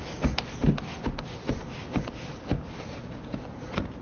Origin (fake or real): real